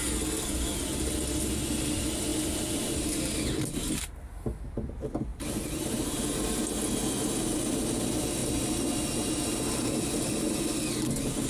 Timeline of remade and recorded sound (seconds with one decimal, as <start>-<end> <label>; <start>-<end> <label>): 0.0-2.3 recorded; 2.3-2.9 remade; 2.9-5.3 recorded; 5.3-6.6 remade; 6.6-11.5 recorded